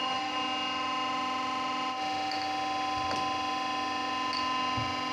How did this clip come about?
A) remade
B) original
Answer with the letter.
B